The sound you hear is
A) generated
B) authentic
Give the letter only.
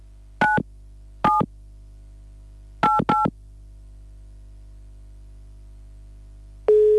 B